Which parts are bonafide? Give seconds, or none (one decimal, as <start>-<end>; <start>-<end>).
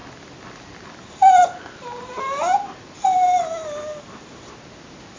0.0-5.2